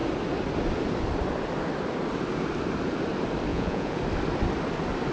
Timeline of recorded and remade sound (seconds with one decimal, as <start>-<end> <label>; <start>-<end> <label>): 0.0-3.5 recorded; 3.5-4.0 remade; 4.0-5.1 recorded